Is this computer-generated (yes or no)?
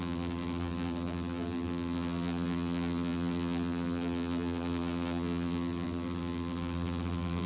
yes